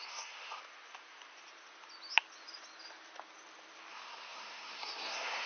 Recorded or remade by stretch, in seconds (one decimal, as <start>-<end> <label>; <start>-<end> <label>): 0.0-0.6 remade; 0.6-3.9 recorded; 3.9-5.5 remade